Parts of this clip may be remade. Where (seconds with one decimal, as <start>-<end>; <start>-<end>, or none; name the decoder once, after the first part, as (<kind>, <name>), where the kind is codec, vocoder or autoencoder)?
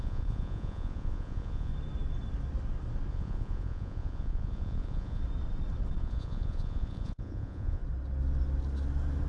0.0-1.7 (vocoder, Vocos); 3.1-5.2; 6.0-7.8